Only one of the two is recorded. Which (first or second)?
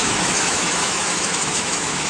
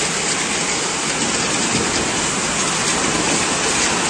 second